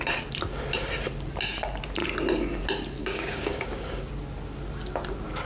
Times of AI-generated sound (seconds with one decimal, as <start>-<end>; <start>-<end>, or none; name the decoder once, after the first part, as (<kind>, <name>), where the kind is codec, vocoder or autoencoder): 3.0-4.1 (codec, DAC)